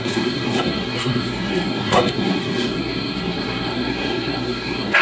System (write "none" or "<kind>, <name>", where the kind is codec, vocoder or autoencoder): codec, SNAC